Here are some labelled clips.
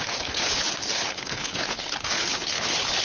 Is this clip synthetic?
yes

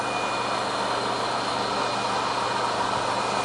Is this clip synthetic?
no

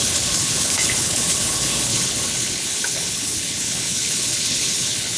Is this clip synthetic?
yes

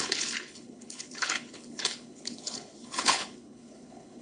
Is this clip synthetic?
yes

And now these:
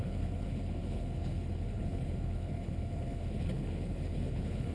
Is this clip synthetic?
yes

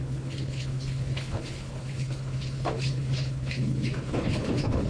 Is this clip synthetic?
yes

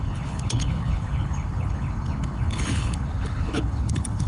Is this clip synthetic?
yes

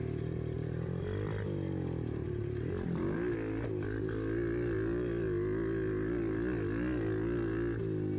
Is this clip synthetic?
no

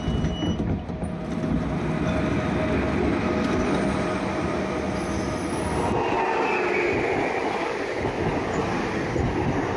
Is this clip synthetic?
no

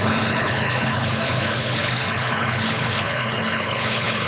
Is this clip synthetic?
yes